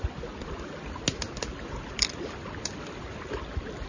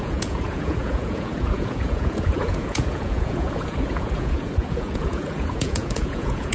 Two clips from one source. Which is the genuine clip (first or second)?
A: first